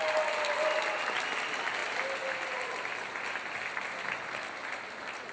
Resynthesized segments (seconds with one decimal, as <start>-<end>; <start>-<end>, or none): none